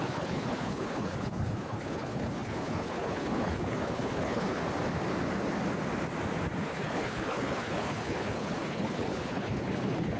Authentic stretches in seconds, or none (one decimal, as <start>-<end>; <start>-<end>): 4.6-6.6